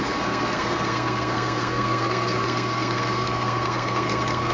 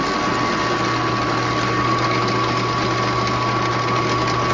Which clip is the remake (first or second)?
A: first